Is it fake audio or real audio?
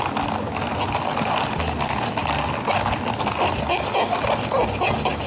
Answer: real